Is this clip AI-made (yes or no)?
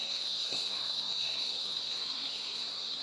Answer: yes